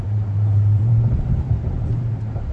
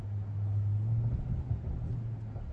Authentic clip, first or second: second